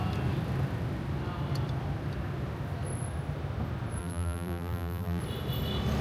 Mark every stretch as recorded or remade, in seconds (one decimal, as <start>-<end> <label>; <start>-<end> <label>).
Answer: 0.0-4.0 recorded; 4.0-5.2 remade; 5.2-6.0 recorded